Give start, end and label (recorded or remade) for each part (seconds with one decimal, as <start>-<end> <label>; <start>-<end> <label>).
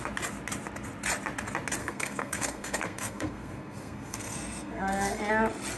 0.0-1.8 recorded; 1.8-5.3 remade; 5.3-5.8 recorded